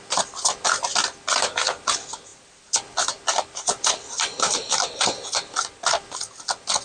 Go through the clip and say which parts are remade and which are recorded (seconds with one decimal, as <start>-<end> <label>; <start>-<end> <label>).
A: 0.0-6.8 recorded